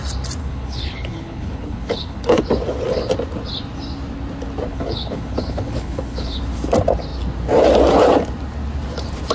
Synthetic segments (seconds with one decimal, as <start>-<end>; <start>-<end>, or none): 0.4-2.4; 4.7-6.4